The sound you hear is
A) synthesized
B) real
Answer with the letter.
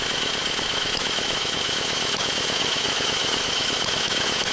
A